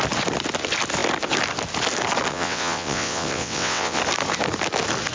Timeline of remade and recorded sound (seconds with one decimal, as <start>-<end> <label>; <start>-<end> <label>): 0.0-2.3 recorded; 2.3-4.0 remade; 4.0-5.1 recorded